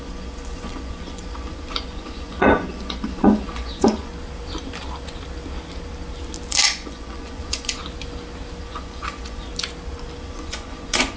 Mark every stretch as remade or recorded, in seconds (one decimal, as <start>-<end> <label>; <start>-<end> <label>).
0.0-4.1 remade; 4.1-6.5 recorded; 6.5-7.8 remade; 7.8-8.6 recorded; 8.6-9.5 remade; 9.5-10.2 recorded; 10.2-11.2 remade